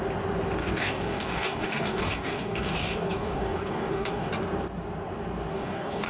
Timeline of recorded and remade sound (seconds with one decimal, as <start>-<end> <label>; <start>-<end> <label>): 0.0-0.6 recorded; 0.6-4.3 remade; 4.3-5.5 recorded; 5.5-6.1 remade